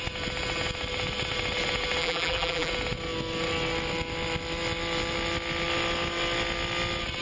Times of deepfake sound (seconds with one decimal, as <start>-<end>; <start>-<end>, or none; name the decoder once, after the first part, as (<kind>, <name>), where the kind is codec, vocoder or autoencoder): 2.0-2.7 (vocoder, BigVGAN v2)